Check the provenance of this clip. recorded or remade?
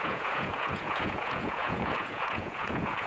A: remade